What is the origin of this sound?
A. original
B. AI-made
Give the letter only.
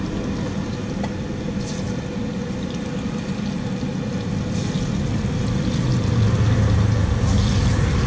A